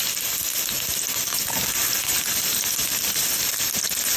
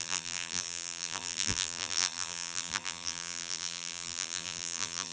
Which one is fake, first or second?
second